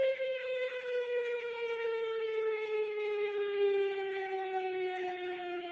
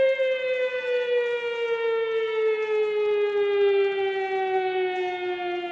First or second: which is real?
second